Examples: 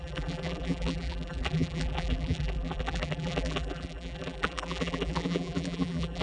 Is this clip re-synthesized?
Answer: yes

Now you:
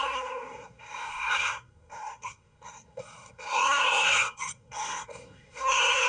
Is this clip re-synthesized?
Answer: yes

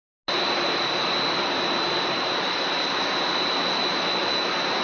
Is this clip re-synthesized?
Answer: no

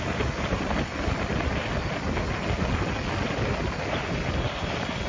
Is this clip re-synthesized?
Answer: no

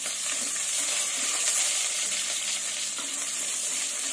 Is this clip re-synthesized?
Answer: no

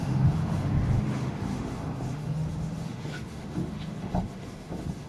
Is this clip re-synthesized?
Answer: yes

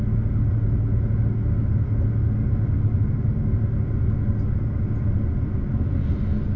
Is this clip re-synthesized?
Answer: no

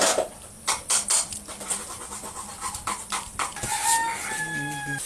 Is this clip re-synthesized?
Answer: no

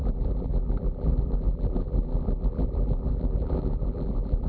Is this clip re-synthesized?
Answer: yes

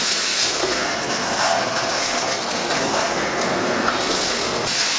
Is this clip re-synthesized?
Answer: yes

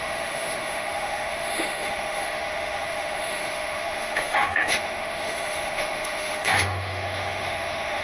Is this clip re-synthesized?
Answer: yes